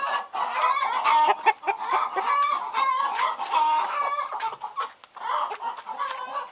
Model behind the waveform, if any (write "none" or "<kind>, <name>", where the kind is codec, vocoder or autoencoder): none